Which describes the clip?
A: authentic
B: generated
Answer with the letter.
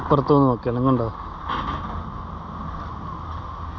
A